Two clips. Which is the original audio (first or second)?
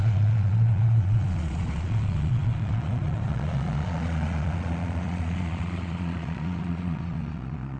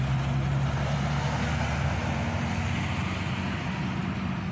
second